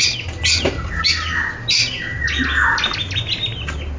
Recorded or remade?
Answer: recorded